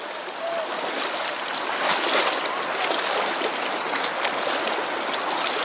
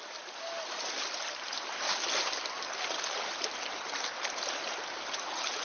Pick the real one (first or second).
first